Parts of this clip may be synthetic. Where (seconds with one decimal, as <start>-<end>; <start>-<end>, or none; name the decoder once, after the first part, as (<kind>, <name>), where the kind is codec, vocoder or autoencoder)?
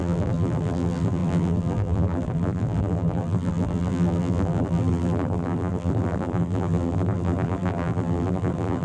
0.0-8.8 (vocoder, BigVGAN v2)